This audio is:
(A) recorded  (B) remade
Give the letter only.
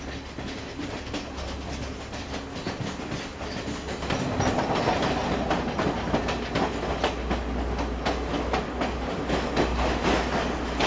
A